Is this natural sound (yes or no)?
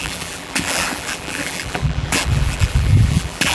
no